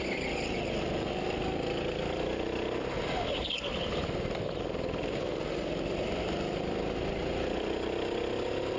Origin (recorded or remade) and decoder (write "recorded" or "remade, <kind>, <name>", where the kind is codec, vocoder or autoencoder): recorded